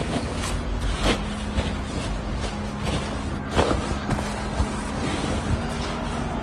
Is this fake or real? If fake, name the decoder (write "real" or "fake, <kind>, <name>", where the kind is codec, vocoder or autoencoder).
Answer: real